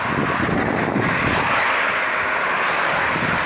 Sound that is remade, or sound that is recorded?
remade